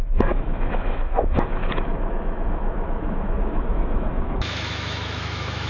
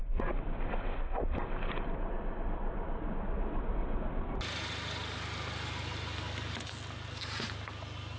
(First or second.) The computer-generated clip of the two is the first